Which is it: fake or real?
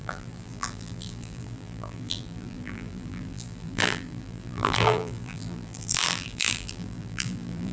fake